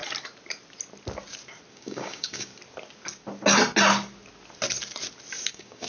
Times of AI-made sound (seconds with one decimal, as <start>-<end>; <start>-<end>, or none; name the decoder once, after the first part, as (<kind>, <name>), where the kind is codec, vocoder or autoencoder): 1.7-2.5 (codec, DAC); 5.5-5.9